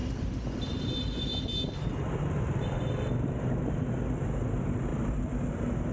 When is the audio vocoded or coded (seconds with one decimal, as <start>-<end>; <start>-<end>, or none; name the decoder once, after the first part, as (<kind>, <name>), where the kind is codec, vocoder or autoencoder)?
4.9-5.5 (vocoder, BigVGAN v2)